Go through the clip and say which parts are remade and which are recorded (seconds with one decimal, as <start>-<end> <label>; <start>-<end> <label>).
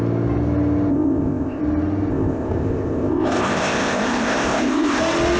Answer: 0.0-0.9 recorded; 0.9-1.6 remade; 1.6-2.1 recorded; 2.1-5.0 remade; 5.0-5.4 recorded